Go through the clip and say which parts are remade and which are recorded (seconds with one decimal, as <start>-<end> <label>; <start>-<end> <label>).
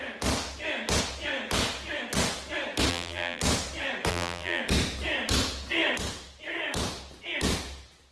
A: 0.0-2.9 recorded; 2.9-3.4 remade; 3.4-4.1 recorded; 4.1-4.6 remade; 4.6-8.1 recorded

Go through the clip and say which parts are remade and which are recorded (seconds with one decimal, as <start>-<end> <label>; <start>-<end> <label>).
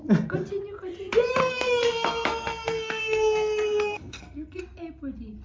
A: 0.0-1.4 recorded; 1.4-4.6 remade; 4.6-5.4 recorded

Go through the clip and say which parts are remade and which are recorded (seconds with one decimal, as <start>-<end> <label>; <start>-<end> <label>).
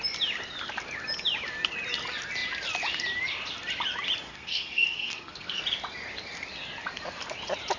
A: 0.0-4.3 recorded; 4.3-5.6 remade; 5.6-7.8 recorded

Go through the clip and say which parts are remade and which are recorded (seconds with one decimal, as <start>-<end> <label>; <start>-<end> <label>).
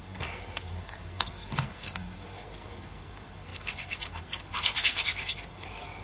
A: 0.0-6.0 remade